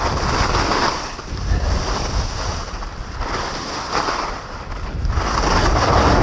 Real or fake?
real